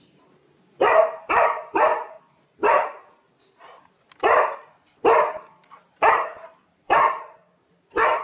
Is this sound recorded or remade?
recorded